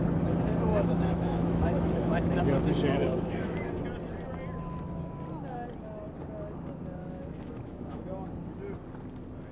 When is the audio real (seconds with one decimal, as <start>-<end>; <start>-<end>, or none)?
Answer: 0.0-0.7; 2.4-3.0; 3.7-7.0; 8.0-9.5